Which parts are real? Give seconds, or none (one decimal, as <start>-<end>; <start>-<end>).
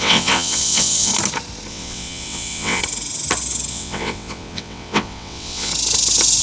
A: 1.1-1.7; 2.8-3.7; 5.7-6.4